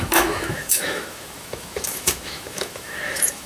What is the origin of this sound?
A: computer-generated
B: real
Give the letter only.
A